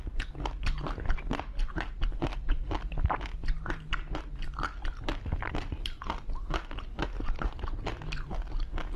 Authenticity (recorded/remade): recorded